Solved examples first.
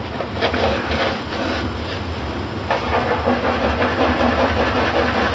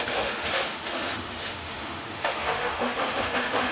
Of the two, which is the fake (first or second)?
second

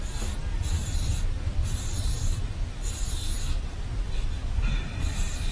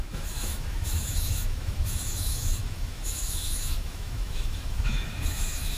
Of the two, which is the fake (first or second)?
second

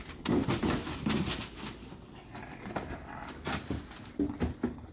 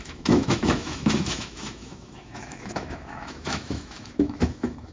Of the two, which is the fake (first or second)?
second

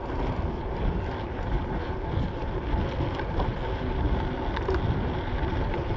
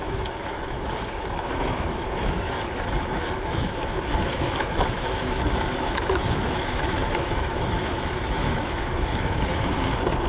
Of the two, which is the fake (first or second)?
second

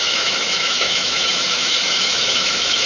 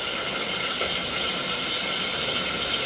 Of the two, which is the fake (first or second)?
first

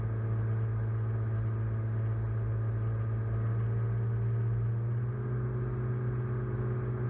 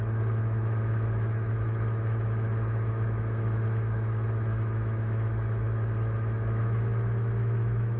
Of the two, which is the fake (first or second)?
second